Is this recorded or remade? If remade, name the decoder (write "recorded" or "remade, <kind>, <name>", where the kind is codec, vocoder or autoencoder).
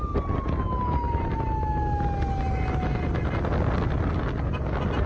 recorded